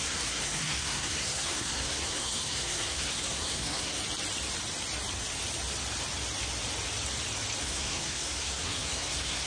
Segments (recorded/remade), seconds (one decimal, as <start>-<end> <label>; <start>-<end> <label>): 0.0-4.0 remade; 4.0-7.6 recorded; 7.6-9.5 remade